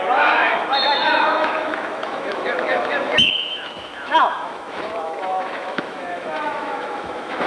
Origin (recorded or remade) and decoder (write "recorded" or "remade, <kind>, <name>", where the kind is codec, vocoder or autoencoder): remade, autoencoder, DAC-VAE